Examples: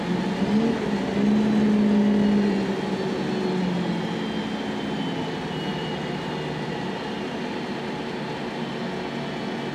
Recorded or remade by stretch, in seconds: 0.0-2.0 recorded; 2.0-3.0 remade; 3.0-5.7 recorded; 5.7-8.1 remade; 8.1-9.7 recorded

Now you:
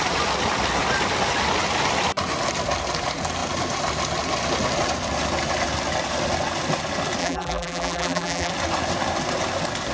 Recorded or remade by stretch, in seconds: 0.0-7.2 recorded; 7.2-8.5 remade; 8.5-9.9 recorded